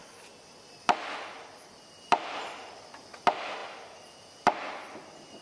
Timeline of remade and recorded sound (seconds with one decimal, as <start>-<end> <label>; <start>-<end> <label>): 0.0-5.4 recorded